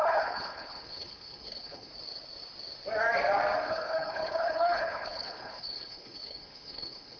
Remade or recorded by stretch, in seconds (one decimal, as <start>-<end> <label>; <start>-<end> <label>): 0.0-1.9 remade; 1.9-3.7 recorded; 3.7-7.2 remade